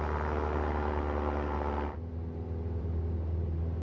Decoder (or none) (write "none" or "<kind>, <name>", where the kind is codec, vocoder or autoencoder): none